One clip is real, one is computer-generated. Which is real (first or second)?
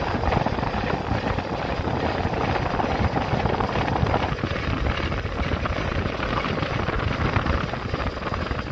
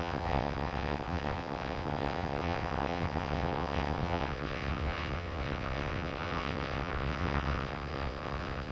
first